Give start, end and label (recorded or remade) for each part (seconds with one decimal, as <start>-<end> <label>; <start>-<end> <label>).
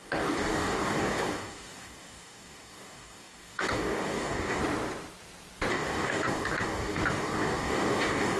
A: 0.0-4.6 remade; 4.6-5.7 recorded; 5.7-8.4 remade